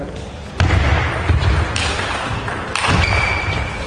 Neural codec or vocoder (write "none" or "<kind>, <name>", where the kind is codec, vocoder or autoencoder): none